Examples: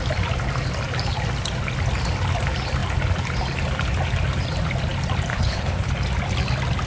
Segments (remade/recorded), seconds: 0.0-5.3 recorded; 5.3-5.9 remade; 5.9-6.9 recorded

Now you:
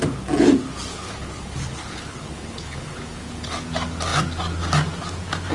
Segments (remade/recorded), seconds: 0.0-0.9 recorded; 0.9-3.5 remade; 3.5-5.5 recorded

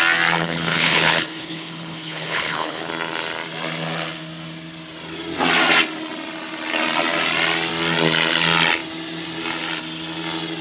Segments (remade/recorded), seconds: 0.0-0.4 recorded; 0.4-2.9 remade; 2.9-10.6 recorded

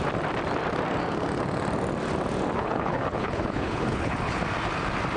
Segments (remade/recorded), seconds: 0.0-2.6 recorded; 2.6-4.4 remade; 4.4-5.2 recorded

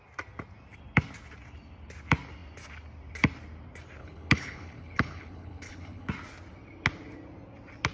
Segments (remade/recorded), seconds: 0.0-4.0 recorded; 4.0-6.1 remade; 6.1-7.9 recorded

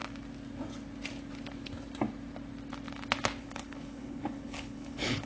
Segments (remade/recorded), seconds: 0.0-3.4 recorded; 3.4-5.3 remade